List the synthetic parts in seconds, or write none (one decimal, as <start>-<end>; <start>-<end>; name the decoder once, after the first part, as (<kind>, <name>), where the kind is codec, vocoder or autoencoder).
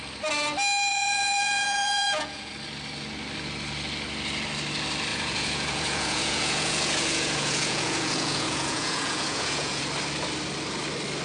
0.9-2.5 (vocoder, Vocos); 5.1-9.8